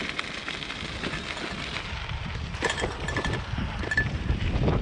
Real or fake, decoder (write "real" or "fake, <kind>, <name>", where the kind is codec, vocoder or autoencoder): real